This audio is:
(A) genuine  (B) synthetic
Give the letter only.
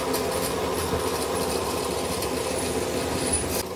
A